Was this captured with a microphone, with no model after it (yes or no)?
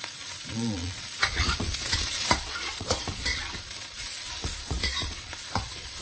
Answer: no